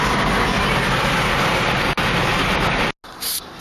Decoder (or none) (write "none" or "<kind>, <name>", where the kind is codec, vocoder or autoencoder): none